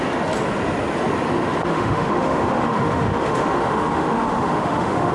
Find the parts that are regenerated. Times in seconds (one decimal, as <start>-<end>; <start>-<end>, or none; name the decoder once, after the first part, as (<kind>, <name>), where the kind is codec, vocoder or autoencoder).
1.7-5.1 (autoencoder, DAC-VAE)